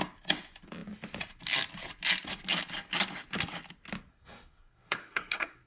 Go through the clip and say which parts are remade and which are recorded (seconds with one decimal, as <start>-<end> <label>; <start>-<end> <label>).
0.0-4.1 recorded; 4.1-5.7 remade